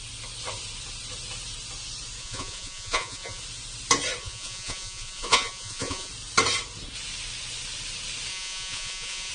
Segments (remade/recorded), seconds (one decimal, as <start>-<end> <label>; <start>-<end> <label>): 0.0-2.2 recorded; 2.2-3.4 remade; 3.4-4.2 recorded; 4.2-6.1 remade; 6.1-8.3 recorded; 8.3-9.3 remade